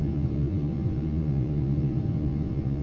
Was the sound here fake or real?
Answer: fake